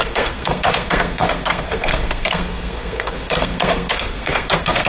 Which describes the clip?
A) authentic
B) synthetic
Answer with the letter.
B